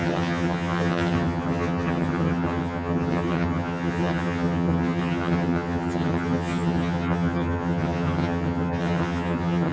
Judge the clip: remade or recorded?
remade